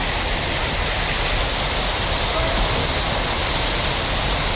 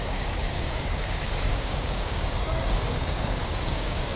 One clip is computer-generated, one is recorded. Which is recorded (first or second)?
first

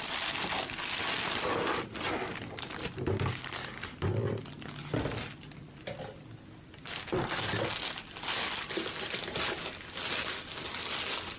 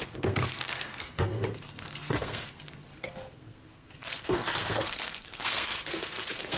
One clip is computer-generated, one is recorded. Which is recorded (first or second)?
first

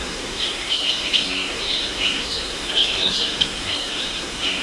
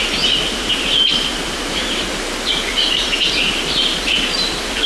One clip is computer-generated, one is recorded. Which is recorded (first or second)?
second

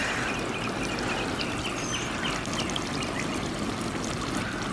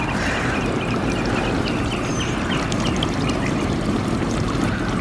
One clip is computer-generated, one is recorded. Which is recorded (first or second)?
first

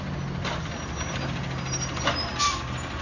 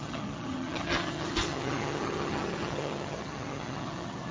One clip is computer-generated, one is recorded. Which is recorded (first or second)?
first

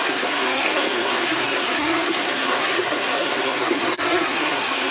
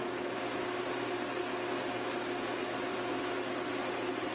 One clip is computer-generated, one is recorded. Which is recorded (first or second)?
second